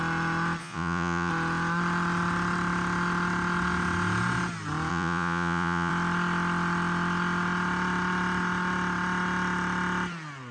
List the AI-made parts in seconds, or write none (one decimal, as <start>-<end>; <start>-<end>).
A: 0.6-1.3; 4.9-5.9